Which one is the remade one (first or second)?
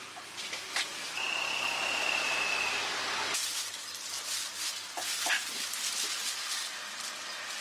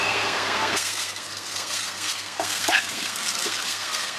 second